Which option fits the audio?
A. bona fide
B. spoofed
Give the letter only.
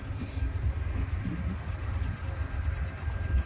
A